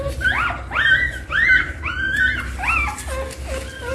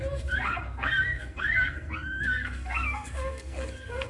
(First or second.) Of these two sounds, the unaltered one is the first